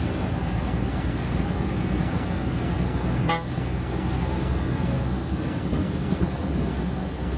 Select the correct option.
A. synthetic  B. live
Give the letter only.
A